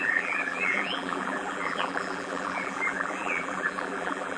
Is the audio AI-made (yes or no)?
yes